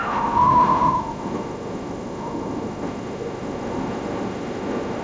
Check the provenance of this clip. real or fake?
fake